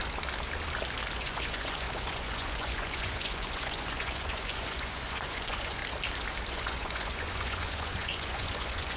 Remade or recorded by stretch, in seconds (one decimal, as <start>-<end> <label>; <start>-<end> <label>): 0.0-1.2 recorded; 1.2-5.8 remade; 5.8-6.5 recorded; 6.5-9.0 remade